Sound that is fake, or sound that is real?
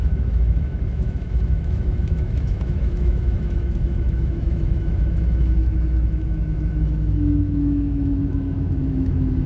fake